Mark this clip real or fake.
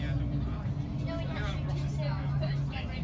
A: real